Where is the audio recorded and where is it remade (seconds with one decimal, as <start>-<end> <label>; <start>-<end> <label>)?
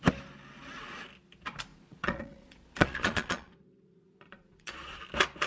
0.0-1.7 recorded; 1.7-5.0 remade; 5.0-5.5 recorded